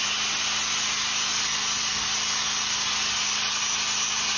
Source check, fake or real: real